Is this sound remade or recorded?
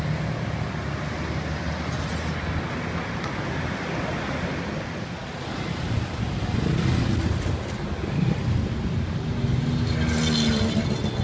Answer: recorded